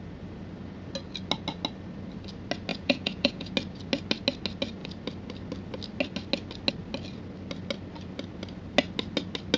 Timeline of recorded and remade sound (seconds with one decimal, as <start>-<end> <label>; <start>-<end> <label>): 0.0-2.7 recorded; 2.7-3.5 remade; 3.5-9.6 recorded